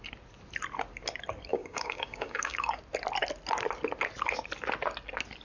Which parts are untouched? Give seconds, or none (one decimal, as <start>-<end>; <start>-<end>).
0.0-1.5; 2.8-5.4

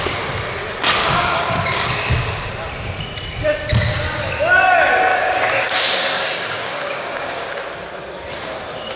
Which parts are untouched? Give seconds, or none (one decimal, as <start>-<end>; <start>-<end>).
0.0-1.0; 2.5-5.1; 7.6-9.0

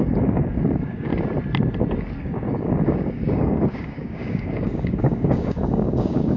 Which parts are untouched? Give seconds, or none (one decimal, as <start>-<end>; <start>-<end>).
1.1-2.2